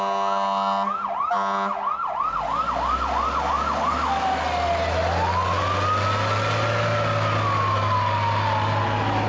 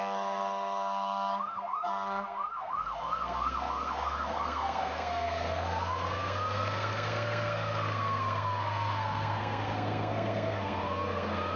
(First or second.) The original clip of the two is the first